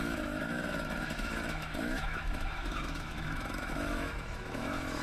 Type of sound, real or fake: fake